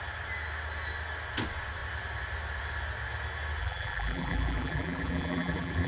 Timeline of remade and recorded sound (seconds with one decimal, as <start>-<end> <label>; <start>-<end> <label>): 0.0-3.6 recorded; 3.6-5.9 remade